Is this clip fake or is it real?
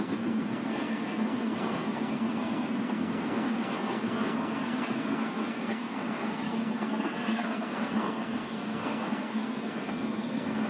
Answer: fake